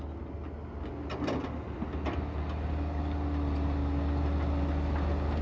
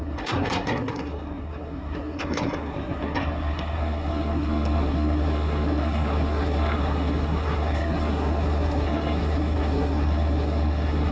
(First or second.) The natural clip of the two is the first